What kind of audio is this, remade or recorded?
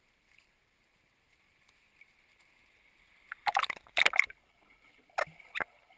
recorded